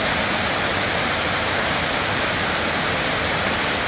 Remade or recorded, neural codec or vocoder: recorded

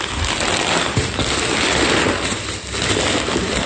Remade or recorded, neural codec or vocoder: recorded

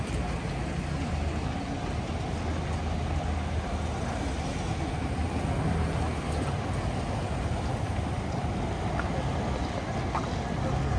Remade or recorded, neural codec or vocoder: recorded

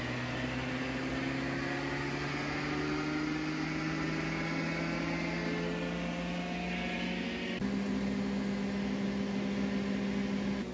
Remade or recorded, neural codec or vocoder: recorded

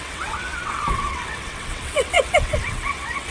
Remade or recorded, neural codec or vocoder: remade, vocoder, WaveNeXt